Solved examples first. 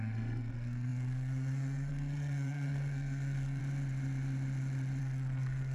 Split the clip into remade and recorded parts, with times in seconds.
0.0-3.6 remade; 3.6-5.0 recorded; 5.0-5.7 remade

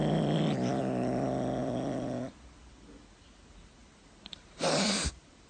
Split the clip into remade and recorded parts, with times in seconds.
0.0-0.8 remade; 0.8-1.6 recorded; 1.6-2.6 remade; 2.6-3.8 recorded; 3.8-5.5 remade

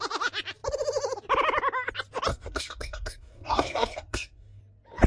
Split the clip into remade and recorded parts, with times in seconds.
0.0-2.3 recorded; 2.3-4.6 remade; 4.6-5.1 recorded

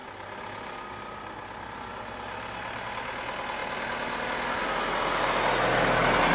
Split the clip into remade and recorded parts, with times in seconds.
0.0-6.3 recorded